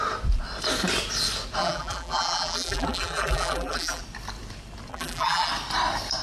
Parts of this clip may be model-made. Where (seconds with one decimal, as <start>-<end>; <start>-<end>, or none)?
1.6-4.0; 4.9-5.5

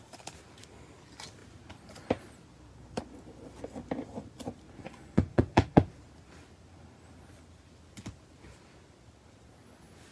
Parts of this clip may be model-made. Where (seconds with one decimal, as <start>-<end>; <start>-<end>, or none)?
4.8-5.8

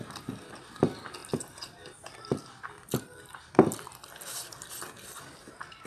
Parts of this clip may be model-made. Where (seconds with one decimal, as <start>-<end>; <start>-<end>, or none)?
1.2-4.7

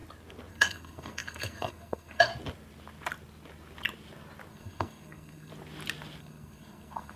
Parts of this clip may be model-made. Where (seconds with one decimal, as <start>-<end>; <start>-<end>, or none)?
0.5-2.3; 4.5-5.5; 6.2-7.2

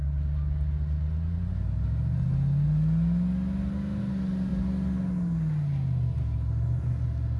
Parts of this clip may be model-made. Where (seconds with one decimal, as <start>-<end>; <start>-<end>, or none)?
none

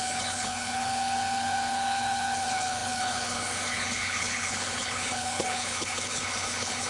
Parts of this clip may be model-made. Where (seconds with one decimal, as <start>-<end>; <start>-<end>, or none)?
0.0-6.9

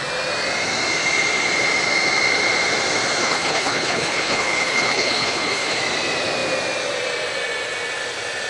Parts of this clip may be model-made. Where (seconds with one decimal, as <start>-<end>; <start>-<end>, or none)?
3.2-5.8

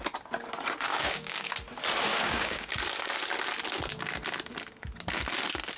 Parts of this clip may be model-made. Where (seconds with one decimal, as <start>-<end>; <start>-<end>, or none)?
0.9-1.5; 2.1-2.7